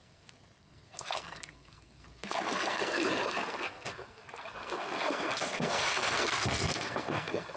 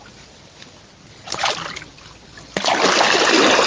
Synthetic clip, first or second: first